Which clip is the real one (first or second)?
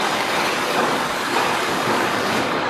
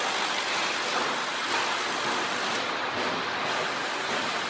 second